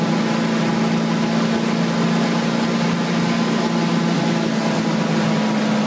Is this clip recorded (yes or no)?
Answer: yes